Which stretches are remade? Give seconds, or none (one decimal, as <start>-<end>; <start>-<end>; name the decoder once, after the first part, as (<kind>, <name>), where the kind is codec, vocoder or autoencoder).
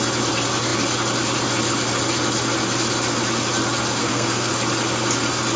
4.0-4.5 (codec, SNAC)